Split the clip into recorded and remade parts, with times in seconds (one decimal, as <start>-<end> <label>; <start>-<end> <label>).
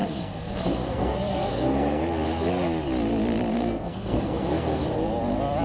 0.0-2.0 remade; 2.0-3.5 recorded; 3.5-4.8 remade; 4.8-5.6 recorded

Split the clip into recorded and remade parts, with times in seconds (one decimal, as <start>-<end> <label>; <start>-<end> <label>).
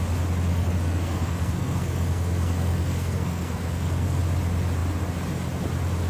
0.0-0.5 recorded; 0.5-4.2 remade; 4.2-6.1 recorded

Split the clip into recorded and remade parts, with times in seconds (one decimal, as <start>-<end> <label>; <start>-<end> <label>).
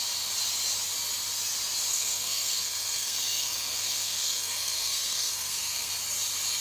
0.0-1.9 recorded; 1.9-5.9 remade; 5.9-6.6 recorded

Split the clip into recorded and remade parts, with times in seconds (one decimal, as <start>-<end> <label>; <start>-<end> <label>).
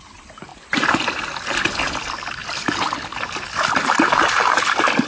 0.0-0.5 recorded; 0.5-1.2 remade; 1.2-5.1 recorded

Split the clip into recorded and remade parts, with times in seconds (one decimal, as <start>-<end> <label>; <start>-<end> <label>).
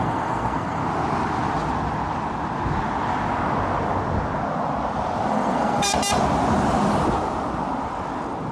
0.0-0.8 remade; 0.8-5.3 recorded; 5.3-5.9 remade; 5.9-8.5 recorded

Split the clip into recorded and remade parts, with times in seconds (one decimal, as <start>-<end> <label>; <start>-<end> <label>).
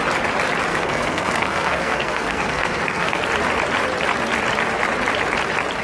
0.0-0.7 recorded; 0.7-3.2 remade; 3.2-5.8 recorded